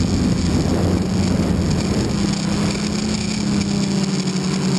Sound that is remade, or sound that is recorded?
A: recorded